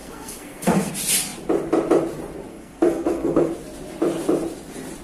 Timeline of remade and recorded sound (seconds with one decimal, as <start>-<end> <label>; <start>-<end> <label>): 0.0-0.9 remade; 0.9-2.5 recorded; 2.5-3.5 remade; 3.5-5.0 recorded